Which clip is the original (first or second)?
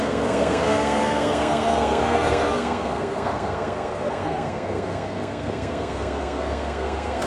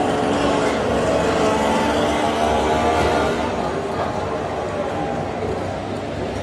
second